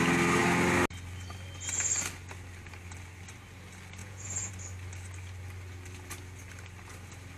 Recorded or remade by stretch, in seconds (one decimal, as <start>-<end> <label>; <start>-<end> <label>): 0.0-4.0 recorded; 4.0-4.5 remade; 4.5-7.4 recorded